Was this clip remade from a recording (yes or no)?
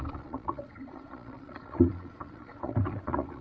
yes